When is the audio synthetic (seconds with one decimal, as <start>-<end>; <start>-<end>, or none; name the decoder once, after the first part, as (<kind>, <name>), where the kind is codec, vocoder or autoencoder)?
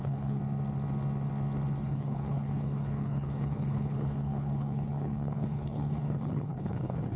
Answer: 0.0-0.4 (codec, HILCodec); 1.8-7.2